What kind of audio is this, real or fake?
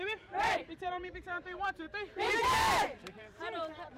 fake